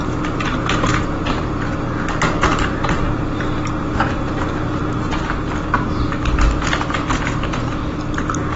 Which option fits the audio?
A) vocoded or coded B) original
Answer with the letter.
B